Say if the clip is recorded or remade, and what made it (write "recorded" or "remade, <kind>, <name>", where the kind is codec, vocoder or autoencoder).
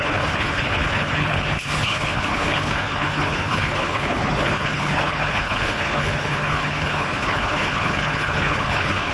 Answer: remade, codec, HILCodec